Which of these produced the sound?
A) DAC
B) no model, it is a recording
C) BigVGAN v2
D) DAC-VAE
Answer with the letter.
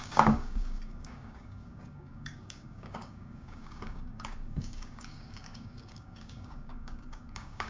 A